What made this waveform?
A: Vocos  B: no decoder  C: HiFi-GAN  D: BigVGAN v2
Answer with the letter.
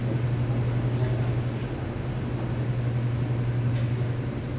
B